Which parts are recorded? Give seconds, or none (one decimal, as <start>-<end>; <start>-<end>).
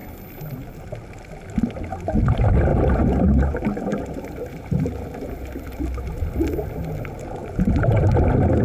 0.0-2.7; 5.8-7.4; 8.0-8.6